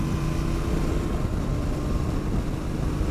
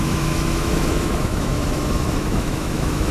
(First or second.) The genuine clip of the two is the first